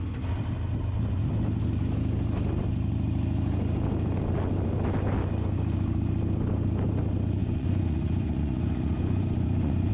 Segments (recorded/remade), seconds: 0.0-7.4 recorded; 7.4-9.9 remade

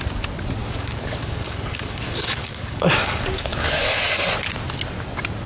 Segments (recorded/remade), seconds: 0.0-0.6 recorded; 0.6-3.9 remade; 3.9-5.5 recorded

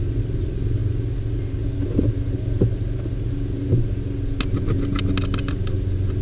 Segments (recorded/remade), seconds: 0.0-6.2 recorded

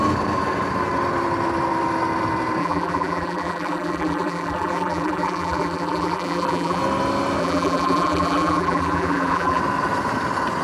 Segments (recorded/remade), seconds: 0.0-2.6 recorded; 2.6-6.8 remade; 6.8-7.4 recorded; 7.4-9.6 remade; 9.6-10.6 recorded

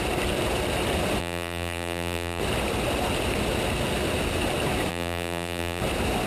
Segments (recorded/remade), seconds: 0.0-1.2 recorded; 1.2-2.4 remade; 2.4-4.9 recorded; 4.9-5.8 remade; 5.8-6.3 recorded

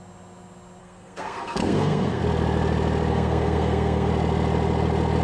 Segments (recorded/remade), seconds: 0.0-0.8 recorded; 0.8-2.2 remade; 2.2-3.1 recorded; 3.1-4.1 remade; 4.1-5.2 recorded